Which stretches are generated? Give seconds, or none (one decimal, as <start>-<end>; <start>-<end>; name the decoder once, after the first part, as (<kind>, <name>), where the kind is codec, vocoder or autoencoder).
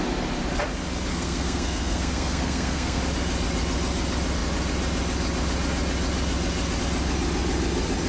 1.1-3.0 (codec, SNAC)